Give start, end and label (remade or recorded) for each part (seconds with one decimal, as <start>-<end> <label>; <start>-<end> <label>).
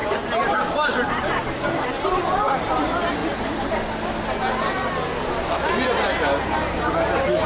0.0-0.7 recorded; 0.7-3.2 remade; 3.2-6.9 recorded; 6.9-7.5 remade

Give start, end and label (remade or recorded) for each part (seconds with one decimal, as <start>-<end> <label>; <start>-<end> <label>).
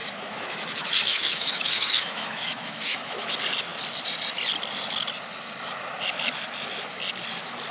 0.0-3.3 remade; 3.3-7.7 recorded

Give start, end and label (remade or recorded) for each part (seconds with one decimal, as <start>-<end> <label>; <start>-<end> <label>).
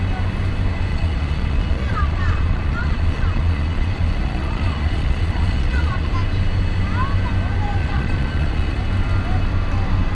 0.0-0.9 recorded; 0.9-6.1 remade; 6.1-7.8 recorded; 7.8-8.8 remade; 8.8-10.1 recorded